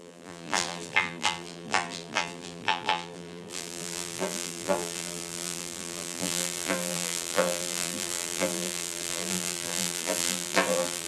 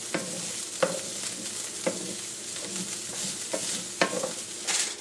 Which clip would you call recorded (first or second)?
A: second